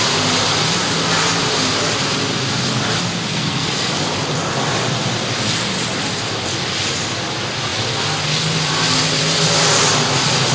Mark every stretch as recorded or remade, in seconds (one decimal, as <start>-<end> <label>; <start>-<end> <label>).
0.0-3.3 recorded; 3.3-3.9 remade; 3.9-10.5 recorded